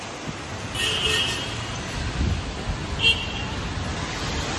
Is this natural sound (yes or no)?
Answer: yes